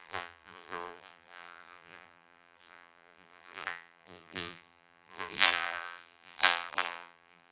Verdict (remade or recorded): remade